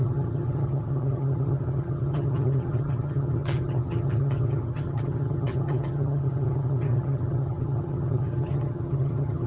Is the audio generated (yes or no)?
yes